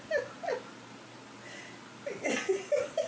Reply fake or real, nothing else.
real